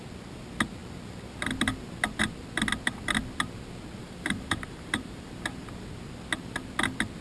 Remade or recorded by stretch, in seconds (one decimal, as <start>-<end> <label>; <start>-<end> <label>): 0.0-4.0 recorded; 4.0-5.2 remade; 5.2-7.2 recorded